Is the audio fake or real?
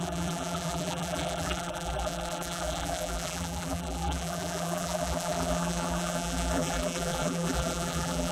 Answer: fake